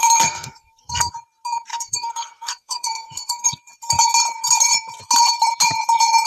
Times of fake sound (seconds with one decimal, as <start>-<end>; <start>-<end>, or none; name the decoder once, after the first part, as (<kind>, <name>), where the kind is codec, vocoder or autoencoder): 0.0-1.1 (codec, SNAC); 1.7-3.5